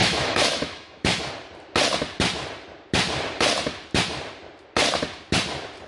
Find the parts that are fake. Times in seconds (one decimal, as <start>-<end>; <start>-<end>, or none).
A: 0.0-1.3